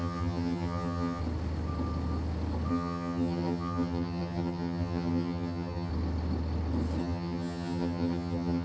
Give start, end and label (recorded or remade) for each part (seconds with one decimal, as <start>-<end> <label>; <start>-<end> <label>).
0.0-1.2 remade; 1.2-2.7 recorded; 2.7-5.9 remade; 5.9-7.0 recorded; 7.0-8.6 remade

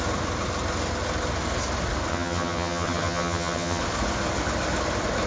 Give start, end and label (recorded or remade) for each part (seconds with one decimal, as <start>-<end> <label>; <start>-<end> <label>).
0.0-2.1 recorded; 2.1-3.8 remade; 3.8-5.3 recorded

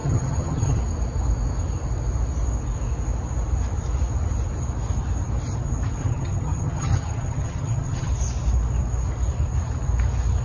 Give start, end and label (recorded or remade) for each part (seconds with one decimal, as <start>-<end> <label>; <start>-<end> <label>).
0.0-0.8 remade; 0.8-6.0 recorded; 6.0-8.1 remade; 8.1-10.4 recorded

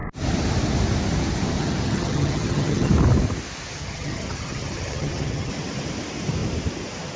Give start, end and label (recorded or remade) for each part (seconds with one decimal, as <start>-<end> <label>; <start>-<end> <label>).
0.0-1.6 recorded; 1.6-2.9 remade; 2.9-3.8 recorded; 3.8-5.5 remade; 5.5-7.2 recorded

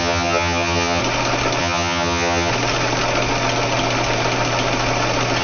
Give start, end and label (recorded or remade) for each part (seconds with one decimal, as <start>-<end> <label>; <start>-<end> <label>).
0.0-1.0 remade; 1.0-1.6 recorded; 1.6-2.5 remade; 2.5-5.4 recorded

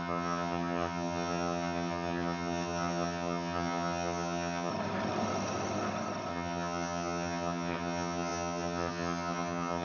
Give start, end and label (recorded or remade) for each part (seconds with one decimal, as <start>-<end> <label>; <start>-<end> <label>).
0.0-4.7 remade; 4.7-6.3 recorded; 6.3-9.8 remade